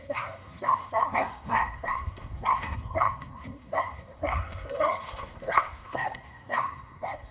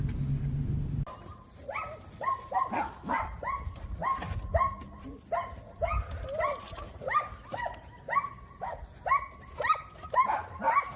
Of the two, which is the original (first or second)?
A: second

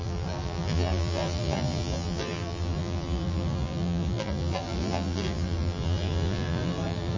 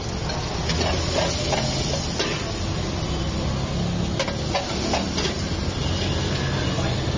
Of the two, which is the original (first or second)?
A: second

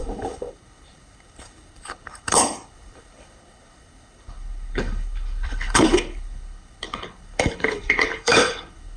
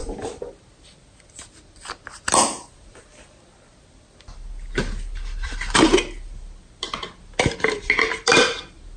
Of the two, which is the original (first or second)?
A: second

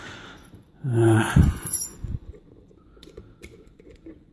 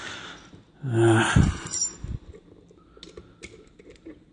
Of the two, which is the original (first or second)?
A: second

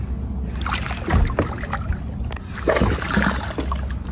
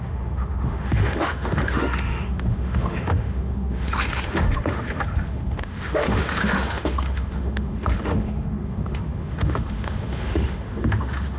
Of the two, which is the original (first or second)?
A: first